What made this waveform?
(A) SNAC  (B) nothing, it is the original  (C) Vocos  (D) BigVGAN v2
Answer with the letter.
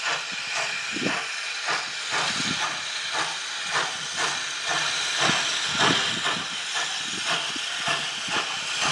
B